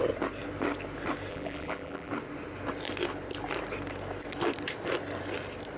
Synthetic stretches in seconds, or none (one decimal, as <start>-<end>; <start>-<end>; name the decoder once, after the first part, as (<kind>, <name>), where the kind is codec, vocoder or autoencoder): 1.3-2.1 (vocoder, BigVGAN v2)